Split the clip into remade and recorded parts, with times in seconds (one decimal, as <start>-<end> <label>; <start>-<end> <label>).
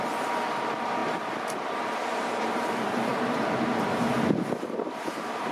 0.0-1.0 remade; 1.0-2.5 recorded; 2.5-3.1 remade; 3.1-4.8 recorded; 4.8-5.5 remade